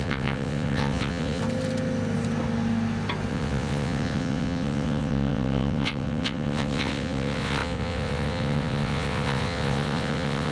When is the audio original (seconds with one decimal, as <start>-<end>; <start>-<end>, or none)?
1.4-3.3